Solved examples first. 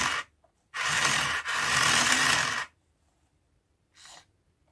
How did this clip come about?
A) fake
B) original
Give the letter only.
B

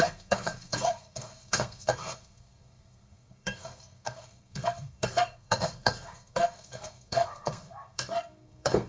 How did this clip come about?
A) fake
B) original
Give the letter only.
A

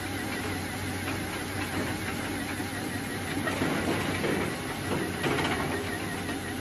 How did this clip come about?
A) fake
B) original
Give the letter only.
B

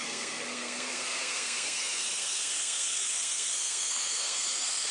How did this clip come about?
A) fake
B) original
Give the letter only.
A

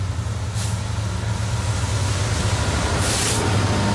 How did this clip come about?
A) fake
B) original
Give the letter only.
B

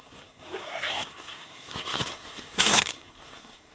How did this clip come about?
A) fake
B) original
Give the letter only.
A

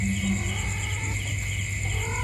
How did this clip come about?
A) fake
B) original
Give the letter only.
B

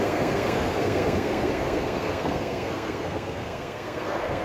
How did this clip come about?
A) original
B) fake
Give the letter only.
B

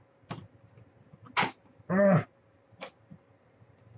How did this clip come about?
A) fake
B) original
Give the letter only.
B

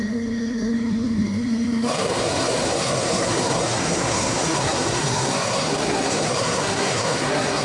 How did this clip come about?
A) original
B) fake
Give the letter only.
B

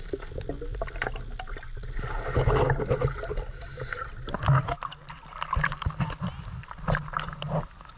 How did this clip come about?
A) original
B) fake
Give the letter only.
A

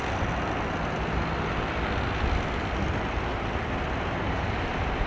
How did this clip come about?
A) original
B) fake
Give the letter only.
A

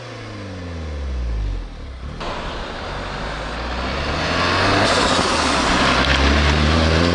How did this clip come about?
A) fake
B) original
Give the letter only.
B